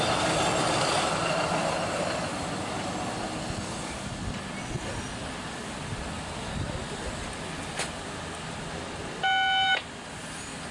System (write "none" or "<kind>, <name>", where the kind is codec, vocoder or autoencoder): none